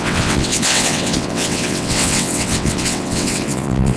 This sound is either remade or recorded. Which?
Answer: remade